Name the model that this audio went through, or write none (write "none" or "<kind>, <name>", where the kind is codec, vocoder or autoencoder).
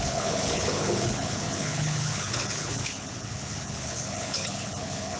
codec, HILCodec